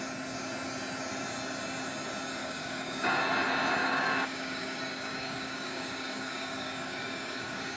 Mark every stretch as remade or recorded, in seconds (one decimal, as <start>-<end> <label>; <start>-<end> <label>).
0.0-2.4 recorded; 2.4-3.2 remade; 3.2-3.8 recorded; 3.8-7.8 remade

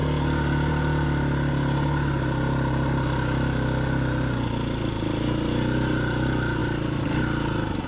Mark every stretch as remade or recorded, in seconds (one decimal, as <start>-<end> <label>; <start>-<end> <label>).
0.0-7.9 recorded

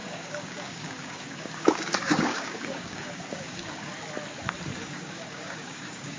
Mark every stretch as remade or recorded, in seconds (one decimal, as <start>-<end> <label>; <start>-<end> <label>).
0.0-3.9 remade; 3.9-4.8 recorded; 4.8-6.2 remade

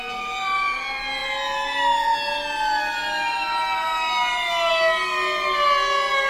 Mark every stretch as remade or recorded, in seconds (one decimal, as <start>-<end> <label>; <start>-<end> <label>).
0.0-6.3 recorded